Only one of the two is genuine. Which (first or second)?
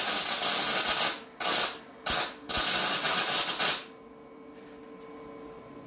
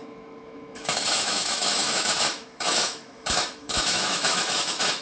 first